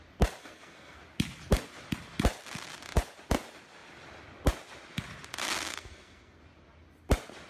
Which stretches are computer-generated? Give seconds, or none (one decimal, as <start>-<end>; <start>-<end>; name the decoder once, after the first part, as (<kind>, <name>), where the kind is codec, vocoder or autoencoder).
0.4-1.0 (codec, SNAC); 5.7-6.4

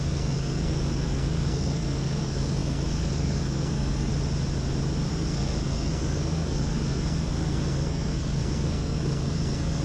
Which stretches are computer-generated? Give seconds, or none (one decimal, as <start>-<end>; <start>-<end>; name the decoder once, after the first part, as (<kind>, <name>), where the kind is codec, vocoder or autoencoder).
0.0-4.1 (codec, SNAC); 5.1-9.8

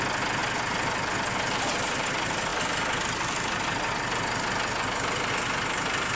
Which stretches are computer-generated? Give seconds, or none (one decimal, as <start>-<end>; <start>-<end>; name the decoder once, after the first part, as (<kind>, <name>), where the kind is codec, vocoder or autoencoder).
none

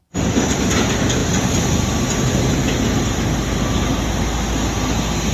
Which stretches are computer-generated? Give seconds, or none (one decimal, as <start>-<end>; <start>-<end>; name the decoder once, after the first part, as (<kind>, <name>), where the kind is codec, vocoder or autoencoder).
none

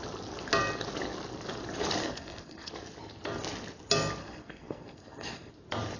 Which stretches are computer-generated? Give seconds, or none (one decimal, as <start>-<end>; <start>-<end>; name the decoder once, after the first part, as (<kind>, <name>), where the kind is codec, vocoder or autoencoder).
2.0-2.7 (codec, SNAC); 4.2-5.5

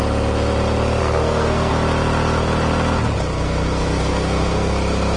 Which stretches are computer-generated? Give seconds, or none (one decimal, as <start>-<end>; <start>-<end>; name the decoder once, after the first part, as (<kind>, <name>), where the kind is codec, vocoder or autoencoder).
1.0-1.7 (codec, SNAC); 3.3-4.7

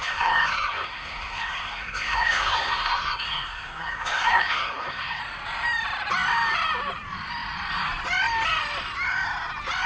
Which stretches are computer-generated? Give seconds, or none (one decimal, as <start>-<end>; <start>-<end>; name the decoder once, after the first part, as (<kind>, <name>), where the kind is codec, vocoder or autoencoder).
0.0-5.2 (codec, SNAC)